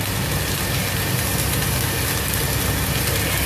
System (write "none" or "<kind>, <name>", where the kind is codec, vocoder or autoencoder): none